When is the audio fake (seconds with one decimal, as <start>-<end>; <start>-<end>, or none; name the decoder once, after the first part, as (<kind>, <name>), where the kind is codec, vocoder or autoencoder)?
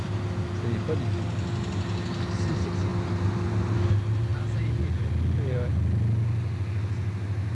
none